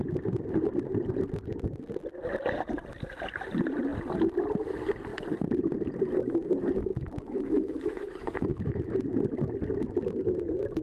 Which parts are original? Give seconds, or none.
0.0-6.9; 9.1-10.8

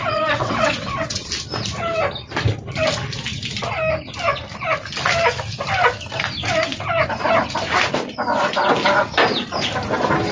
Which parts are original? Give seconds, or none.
1.3-10.3

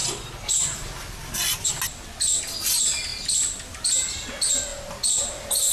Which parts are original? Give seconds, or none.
0.0-5.7

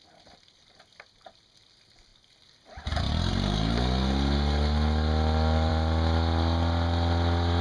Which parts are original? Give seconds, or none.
0.0-7.6

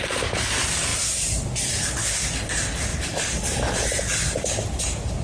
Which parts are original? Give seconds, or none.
0.0-5.2

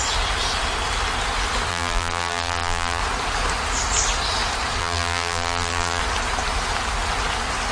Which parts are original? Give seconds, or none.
0.0-1.7; 3.0-4.8; 6.0-7.7

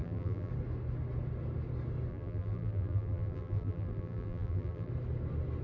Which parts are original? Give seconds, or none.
0.5-2.1; 4.9-5.6

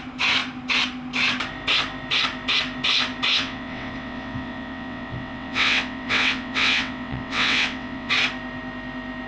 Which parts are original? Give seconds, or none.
0.0-3.3; 8.1-9.3